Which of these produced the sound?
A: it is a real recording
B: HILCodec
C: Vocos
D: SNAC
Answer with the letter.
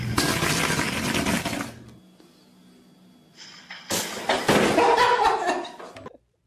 A